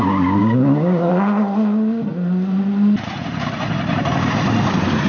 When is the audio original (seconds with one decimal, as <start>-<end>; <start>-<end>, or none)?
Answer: 0.0-0.4; 1.1-5.1